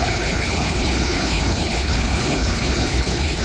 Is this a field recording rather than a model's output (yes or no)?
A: no